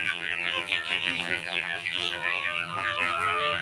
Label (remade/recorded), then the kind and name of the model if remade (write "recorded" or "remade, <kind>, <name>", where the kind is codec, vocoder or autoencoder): remade, vocoder, BigVGAN v2